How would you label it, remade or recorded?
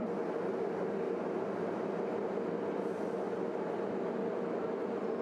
recorded